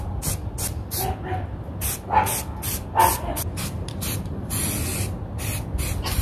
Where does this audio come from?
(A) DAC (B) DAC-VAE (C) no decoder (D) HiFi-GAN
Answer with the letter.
C